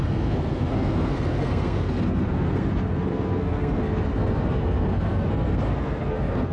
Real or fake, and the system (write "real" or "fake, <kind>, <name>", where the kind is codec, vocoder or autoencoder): fake, codec, SNAC